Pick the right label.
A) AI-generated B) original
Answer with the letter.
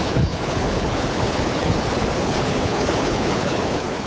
A